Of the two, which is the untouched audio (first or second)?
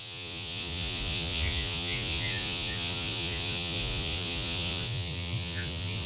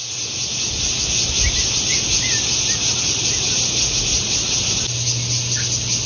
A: second